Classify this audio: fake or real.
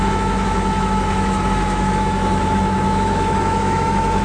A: fake